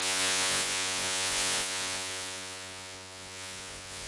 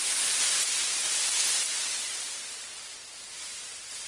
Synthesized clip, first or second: first